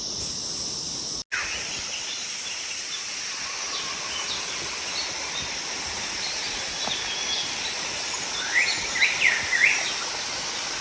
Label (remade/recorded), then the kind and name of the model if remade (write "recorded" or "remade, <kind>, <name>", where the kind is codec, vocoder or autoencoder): recorded